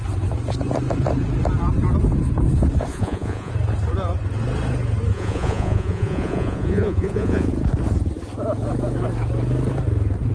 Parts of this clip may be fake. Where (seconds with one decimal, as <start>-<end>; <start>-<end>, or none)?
2.9-3.5; 5.1-7.5